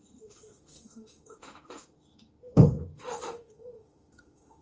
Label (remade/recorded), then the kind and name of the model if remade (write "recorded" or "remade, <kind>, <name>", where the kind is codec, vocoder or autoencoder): remade, autoencoder, DAC-VAE